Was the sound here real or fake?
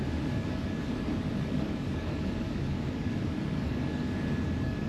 fake